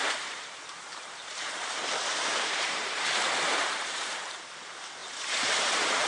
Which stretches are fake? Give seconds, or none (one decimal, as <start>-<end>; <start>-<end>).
0.0-1.8; 2.7-6.1